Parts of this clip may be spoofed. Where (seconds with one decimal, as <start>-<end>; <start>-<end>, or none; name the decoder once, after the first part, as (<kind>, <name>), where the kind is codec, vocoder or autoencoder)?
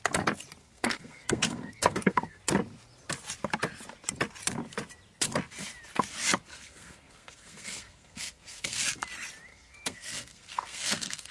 0.6-2.4 (codec, SNAC); 6.5-8.8; 9.5-11.3